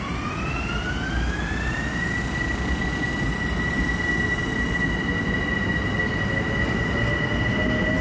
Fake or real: real